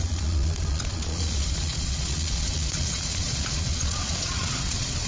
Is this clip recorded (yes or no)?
no